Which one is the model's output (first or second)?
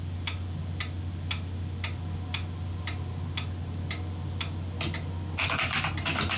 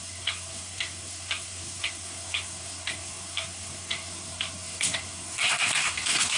second